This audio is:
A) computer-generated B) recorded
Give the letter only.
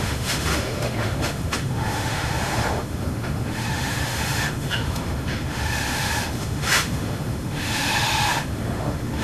A